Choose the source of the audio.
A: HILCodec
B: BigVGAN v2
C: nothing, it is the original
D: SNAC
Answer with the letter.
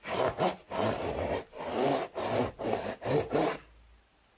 C